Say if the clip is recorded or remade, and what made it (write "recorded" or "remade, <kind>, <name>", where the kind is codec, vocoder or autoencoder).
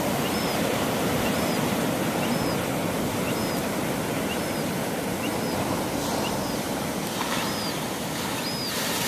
recorded